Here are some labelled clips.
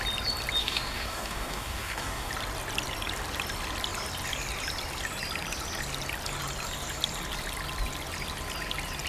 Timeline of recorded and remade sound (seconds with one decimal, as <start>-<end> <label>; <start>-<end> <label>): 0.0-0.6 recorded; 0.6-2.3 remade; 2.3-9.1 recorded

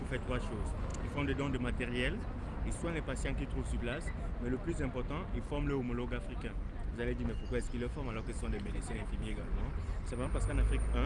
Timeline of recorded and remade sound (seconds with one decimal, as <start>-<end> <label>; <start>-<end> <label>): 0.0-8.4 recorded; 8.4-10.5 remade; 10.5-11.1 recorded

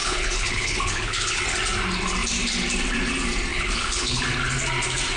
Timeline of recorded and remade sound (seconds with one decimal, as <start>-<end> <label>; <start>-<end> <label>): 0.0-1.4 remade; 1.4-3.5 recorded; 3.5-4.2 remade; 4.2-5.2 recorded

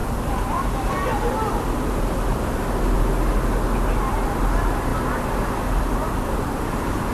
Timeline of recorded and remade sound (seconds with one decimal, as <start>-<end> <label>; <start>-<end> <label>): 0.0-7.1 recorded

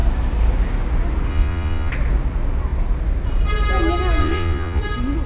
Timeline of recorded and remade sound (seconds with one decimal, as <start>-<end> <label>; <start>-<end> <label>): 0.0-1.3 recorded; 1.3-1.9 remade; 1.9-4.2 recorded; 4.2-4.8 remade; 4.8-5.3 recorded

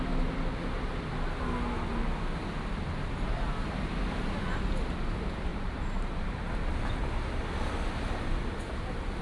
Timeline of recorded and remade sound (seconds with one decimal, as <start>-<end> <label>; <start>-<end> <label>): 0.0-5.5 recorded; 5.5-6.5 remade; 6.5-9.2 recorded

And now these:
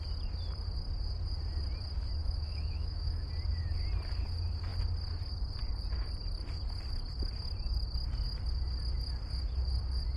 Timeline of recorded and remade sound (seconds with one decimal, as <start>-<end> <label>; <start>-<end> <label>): 0.0-2.2 recorded; 2.2-3.3 remade; 3.3-10.2 recorded